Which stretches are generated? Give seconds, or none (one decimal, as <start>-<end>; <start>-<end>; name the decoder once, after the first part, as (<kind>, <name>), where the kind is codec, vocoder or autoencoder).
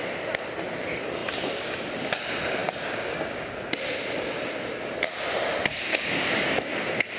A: 2.6-3.6 (codec, DAC); 5.9-6.7